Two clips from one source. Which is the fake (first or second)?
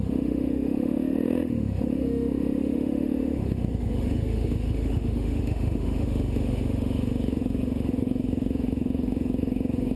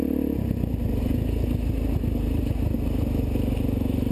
first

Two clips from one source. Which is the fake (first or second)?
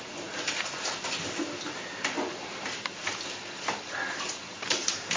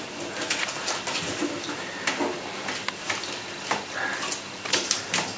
first